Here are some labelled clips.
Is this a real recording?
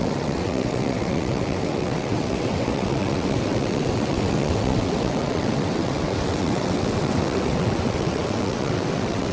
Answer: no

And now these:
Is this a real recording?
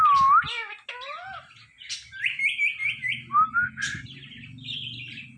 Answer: yes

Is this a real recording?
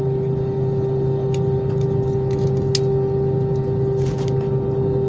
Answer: yes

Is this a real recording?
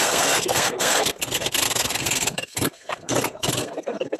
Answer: no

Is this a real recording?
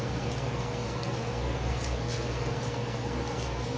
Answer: no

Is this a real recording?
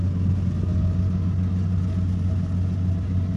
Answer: yes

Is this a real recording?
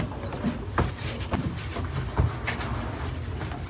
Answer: yes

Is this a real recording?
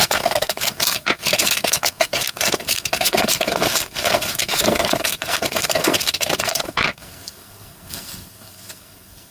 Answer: no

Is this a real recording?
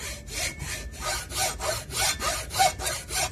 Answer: no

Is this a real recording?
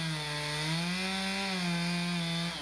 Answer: yes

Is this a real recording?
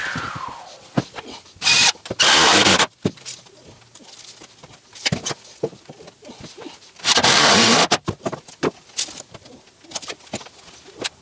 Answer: yes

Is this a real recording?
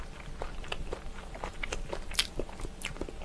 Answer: yes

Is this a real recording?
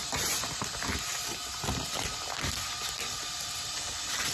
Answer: yes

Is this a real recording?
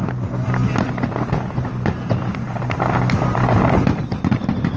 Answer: yes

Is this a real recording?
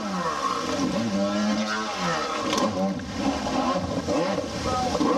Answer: yes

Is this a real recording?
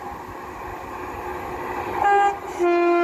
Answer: yes